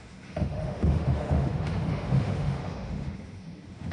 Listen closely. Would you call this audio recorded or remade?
remade